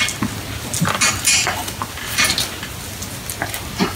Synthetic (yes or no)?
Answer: no